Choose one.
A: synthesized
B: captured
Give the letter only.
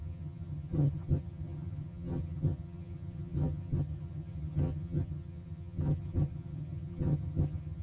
A